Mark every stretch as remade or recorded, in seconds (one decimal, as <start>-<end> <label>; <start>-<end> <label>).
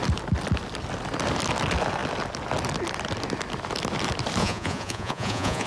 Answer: 0.0-4.4 recorded; 4.4-5.7 remade